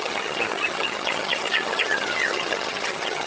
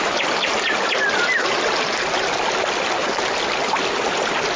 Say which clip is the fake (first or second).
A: first